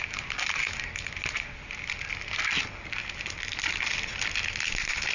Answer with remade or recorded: recorded